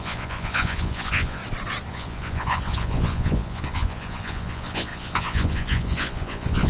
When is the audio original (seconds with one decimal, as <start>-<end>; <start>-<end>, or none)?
1.4-1.9